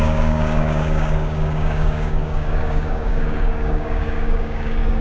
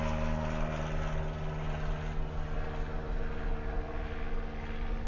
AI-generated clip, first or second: first